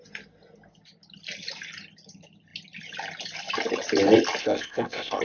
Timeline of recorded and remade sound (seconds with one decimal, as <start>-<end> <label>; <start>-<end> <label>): 0.0-4.4 recorded; 4.4-5.2 remade